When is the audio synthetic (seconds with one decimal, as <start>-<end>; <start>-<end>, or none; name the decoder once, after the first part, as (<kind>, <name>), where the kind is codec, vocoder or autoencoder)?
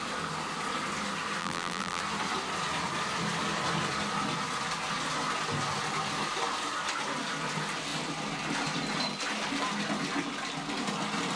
1.4-2.0 (vocoder, BigVGAN v2)